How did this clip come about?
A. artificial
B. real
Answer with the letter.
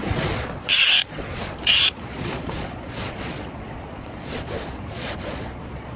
A